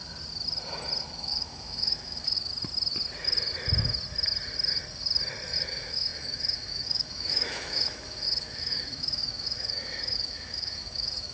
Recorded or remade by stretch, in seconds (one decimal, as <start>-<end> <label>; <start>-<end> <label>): 0.0-1.0 recorded; 1.0-2.5 remade; 2.5-5.6 recorded; 5.6-11.3 remade